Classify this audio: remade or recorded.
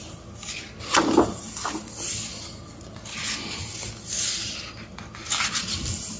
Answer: recorded